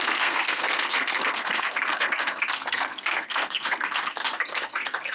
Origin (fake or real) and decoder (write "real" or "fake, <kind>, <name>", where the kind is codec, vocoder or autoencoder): fake, codec, SNAC